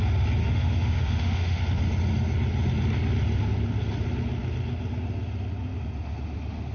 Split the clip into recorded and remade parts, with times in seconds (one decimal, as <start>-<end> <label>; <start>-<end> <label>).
0.0-0.4 recorded; 0.4-1.6 remade; 1.6-6.7 recorded